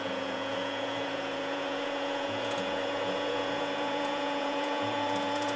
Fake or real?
fake